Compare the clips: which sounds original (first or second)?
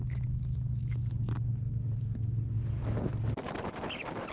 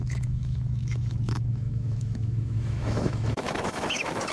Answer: first